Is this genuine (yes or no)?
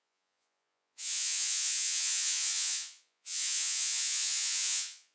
no